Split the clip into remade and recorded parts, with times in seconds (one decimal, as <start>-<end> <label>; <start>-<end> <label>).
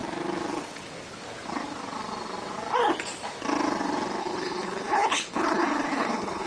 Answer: 0.0-4.2 recorded; 4.2-6.5 remade